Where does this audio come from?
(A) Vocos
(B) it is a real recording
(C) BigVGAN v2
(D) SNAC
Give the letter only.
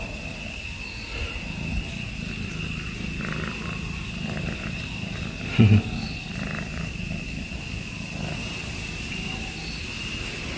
B